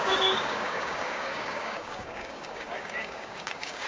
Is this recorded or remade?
remade